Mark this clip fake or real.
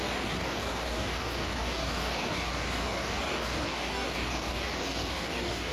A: fake